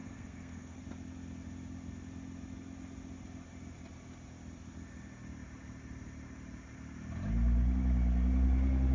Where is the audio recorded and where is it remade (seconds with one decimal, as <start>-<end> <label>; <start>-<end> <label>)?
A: 0.0-0.8 remade; 0.8-8.9 recorded